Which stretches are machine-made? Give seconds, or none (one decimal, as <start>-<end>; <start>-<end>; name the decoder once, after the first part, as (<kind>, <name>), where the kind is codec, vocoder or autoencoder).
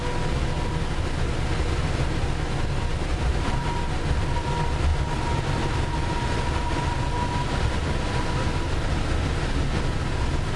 3.1-3.7 (vocoder, BigVGAN v2)